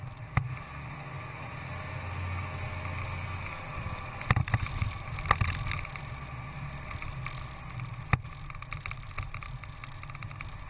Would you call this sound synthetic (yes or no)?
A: no